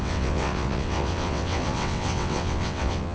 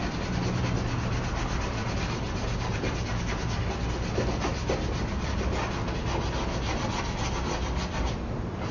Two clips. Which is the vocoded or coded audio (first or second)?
first